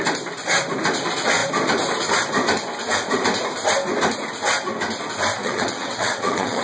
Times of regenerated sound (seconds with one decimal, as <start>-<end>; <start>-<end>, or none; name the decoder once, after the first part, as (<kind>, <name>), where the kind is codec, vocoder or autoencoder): 5.4-6.6 (vocoder, WaveNeXt)